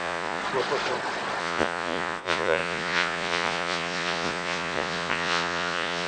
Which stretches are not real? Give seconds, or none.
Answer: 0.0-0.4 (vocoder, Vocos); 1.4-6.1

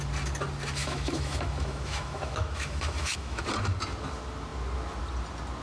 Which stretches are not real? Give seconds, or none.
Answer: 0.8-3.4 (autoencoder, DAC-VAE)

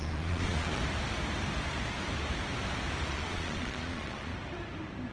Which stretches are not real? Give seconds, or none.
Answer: 0.0-0.8 (vocoder, Vocos); 3.1-4.3